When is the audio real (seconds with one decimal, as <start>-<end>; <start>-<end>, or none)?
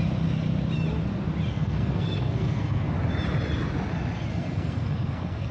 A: 0.0-1.5; 2.9-4.3